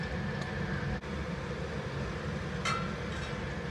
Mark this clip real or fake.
real